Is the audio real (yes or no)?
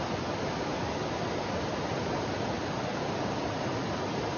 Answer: yes